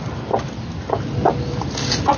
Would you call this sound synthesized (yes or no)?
no